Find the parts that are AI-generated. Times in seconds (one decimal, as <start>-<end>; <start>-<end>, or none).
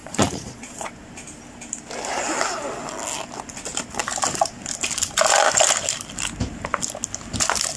0.0-0.9